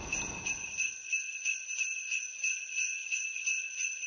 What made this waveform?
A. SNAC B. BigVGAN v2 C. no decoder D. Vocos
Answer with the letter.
C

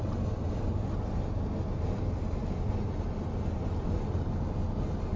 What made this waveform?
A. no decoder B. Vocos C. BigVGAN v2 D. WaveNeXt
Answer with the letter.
A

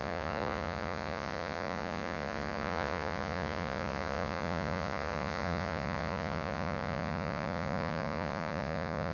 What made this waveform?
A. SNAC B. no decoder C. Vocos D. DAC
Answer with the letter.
C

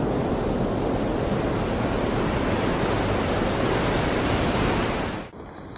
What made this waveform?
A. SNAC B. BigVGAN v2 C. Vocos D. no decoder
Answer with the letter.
D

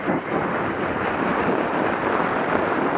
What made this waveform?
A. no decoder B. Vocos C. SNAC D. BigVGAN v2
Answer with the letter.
A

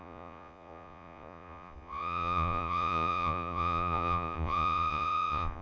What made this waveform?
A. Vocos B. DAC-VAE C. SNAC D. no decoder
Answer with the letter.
A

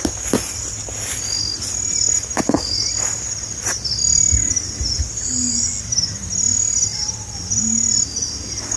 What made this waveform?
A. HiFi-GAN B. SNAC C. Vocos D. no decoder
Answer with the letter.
D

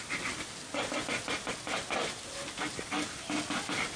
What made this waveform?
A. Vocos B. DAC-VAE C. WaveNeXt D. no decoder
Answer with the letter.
D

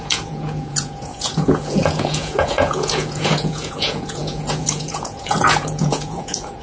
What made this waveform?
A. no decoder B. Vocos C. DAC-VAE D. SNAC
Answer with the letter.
B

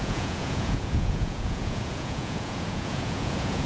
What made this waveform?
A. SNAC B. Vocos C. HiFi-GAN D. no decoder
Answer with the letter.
B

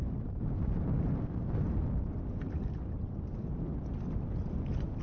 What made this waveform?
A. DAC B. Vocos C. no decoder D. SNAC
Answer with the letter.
C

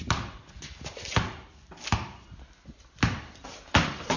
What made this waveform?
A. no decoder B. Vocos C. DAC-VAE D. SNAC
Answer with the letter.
A